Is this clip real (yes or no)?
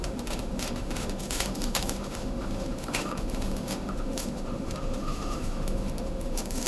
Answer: no